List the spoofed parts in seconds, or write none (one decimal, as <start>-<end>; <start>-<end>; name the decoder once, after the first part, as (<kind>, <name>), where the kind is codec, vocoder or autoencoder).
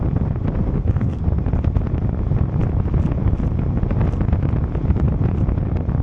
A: 0.6-1.2 (codec, SNAC)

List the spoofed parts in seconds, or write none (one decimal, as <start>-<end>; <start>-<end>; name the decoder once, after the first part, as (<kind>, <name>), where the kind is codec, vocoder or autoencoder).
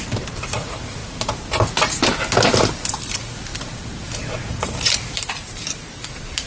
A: 0.0-1.0 (vocoder, BigVGAN v2); 2.7-6.5